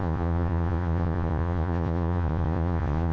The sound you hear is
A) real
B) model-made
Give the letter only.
B